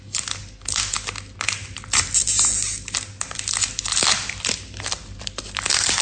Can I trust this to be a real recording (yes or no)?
yes